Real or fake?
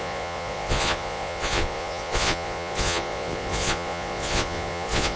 fake